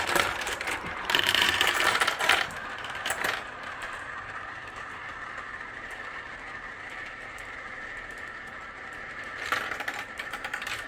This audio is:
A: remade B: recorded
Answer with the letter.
A